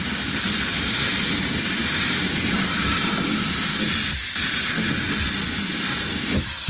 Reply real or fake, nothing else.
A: real